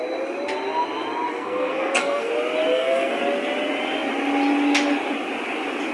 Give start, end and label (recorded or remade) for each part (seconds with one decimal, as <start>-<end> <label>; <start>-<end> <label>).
0.0-1.3 recorded; 1.3-2.3 remade; 2.3-2.7 recorded; 2.7-3.2 remade; 3.2-5.9 recorded